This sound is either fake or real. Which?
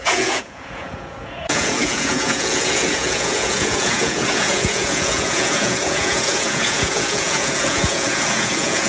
fake